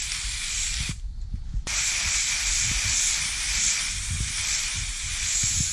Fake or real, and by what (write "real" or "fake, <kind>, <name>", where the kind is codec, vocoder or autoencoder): real